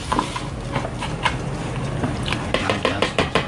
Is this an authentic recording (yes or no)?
yes